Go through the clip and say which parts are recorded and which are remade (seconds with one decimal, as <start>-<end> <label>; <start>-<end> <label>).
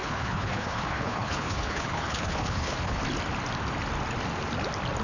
0.0-3.0 remade; 3.0-5.0 recorded